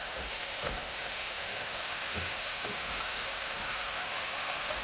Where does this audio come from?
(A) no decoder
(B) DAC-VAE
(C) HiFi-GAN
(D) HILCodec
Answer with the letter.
B